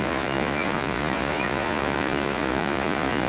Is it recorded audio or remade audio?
remade